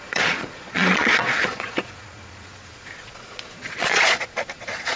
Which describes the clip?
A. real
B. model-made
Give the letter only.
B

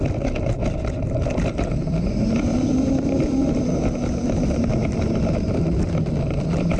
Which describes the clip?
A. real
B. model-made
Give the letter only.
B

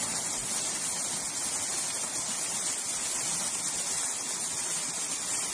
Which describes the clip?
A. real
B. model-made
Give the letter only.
A